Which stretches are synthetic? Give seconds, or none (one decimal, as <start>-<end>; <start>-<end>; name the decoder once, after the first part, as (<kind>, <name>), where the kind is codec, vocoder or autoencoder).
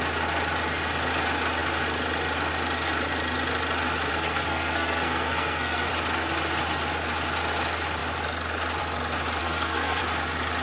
4.1-5.9 (codec, SNAC); 9.4-10.0